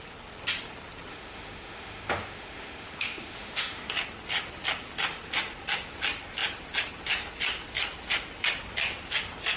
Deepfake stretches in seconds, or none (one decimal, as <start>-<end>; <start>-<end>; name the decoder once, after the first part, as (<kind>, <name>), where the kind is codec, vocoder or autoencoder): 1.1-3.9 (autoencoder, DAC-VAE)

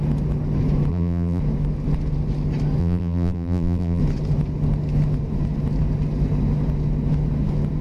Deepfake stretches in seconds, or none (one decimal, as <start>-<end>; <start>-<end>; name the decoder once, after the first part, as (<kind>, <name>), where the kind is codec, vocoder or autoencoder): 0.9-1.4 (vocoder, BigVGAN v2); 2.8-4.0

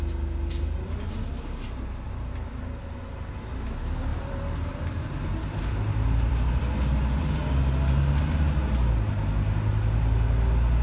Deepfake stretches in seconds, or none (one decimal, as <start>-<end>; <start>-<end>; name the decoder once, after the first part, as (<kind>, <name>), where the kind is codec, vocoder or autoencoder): 4.1-8.0 (vocoder, BigVGAN v2)

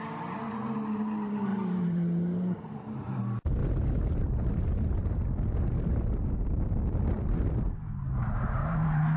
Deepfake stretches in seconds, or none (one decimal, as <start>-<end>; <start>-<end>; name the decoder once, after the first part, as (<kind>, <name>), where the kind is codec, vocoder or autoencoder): 1.5-3.2 (vocoder, BigVGAN v2)

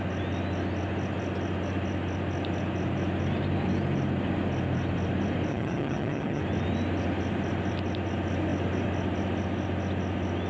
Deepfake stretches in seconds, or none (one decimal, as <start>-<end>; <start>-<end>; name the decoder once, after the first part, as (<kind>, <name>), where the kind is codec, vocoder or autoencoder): 5.5-6.4 (vocoder, HiFi-GAN)

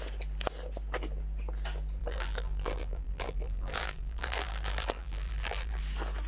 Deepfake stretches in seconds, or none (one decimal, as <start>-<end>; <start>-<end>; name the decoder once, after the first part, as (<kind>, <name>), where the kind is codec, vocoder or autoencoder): 2.0-5.8 (vocoder, BigVGAN v2)